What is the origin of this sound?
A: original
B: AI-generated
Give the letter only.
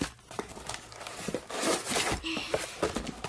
B